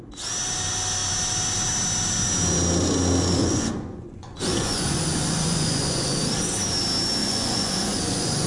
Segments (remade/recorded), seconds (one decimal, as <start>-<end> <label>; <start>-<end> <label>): 0.0-3.4 recorded; 3.4-6.2 remade; 6.2-7.2 recorded; 7.2-8.5 remade

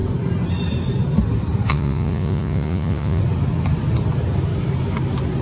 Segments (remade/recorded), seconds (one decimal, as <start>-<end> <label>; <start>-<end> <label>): 0.0-1.7 recorded; 1.7-3.2 remade; 3.2-5.4 recorded

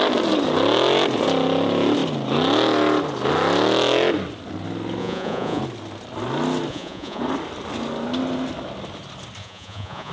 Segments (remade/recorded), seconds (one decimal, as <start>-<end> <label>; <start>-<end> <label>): 0.0-5.0 recorded; 5.0-5.6 remade; 5.6-6.7 recorded; 6.7-7.2 remade; 7.2-9.4 recorded; 9.4-10.1 remade

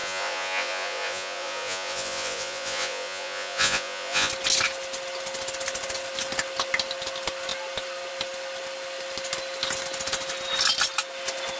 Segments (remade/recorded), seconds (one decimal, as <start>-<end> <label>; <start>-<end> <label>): 0.0-4.3 remade; 4.3-11.6 recorded

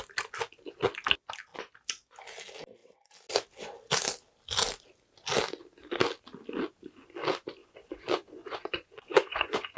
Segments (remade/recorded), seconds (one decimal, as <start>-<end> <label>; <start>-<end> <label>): 0.0-7.6 recorded; 7.6-9.8 remade